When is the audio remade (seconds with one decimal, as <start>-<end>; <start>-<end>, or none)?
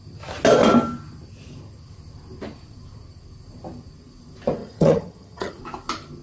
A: 4.6-5.6